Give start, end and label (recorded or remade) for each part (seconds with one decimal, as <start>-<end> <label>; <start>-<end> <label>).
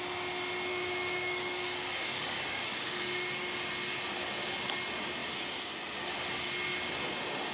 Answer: 0.0-0.7 recorded; 0.7-3.6 remade; 3.6-7.5 recorded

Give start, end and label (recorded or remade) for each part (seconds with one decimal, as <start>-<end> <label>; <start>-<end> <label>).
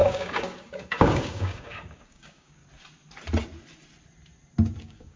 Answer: 0.0-2.6 remade; 2.6-4.8 recorded; 4.8-5.2 remade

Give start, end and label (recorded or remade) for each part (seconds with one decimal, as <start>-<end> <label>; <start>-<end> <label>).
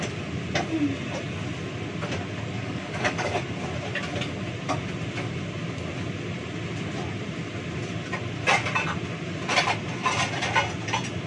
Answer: 0.0-2.6 recorded; 2.6-3.3 remade; 3.3-11.3 recorded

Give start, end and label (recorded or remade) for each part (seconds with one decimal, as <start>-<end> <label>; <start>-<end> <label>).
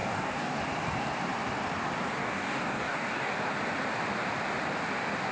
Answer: 0.0-0.6 remade; 0.6-2.2 recorded; 2.2-3.3 remade; 3.3-5.3 recorded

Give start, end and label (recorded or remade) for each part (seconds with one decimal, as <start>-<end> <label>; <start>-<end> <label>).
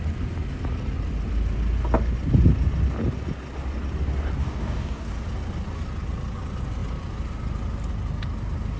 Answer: 0.0-4.4 recorded; 4.4-5.1 remade; 5.1-8.8 recorded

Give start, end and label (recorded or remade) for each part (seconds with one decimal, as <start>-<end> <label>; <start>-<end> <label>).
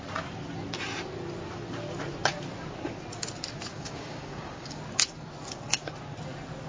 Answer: 0.0-3.7 recorded; 3.7-4.8 remade; 4.8-6.7 recorded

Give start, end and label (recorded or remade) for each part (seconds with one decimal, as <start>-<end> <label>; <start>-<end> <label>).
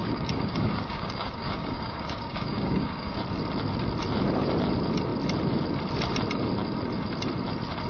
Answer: 0.0-3.2 remade; 3.2-7.9 recorded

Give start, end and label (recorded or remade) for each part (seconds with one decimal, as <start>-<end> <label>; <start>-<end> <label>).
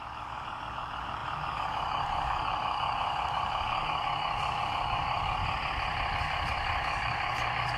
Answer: 0.0-5.4 remade; 5.4-6.1 recorded; 6.1-7.8 remade